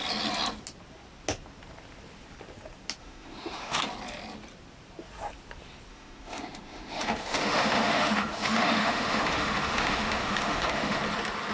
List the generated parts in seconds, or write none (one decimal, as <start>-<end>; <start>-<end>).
3.0-3.8; 5.9-11.0